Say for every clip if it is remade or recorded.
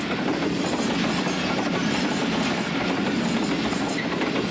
recorded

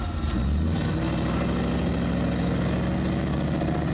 recorded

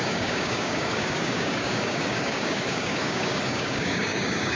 remade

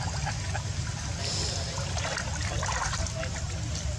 recorded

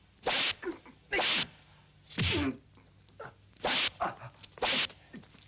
recorded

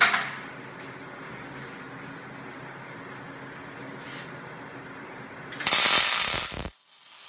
recorded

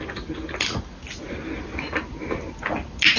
recorded